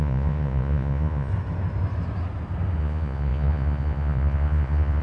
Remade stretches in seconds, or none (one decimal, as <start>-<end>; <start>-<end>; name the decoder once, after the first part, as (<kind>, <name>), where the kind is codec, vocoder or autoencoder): 0.0-1.3 (vocoder, Vocos); 2.8-5.0